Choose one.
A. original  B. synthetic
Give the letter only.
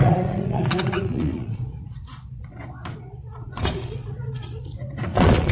B